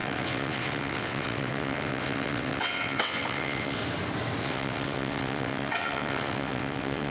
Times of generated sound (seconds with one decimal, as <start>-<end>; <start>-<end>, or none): 0.0-3.8; 4.4-7.1